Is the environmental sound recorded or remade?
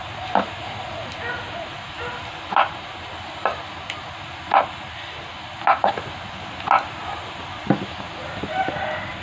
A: recorded